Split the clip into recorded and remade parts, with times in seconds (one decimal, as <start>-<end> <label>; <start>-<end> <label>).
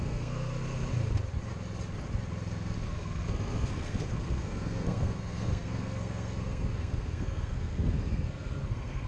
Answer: 0.0-0.6 remade; 0.6-2.8 recorded; 2.8-9.1 remade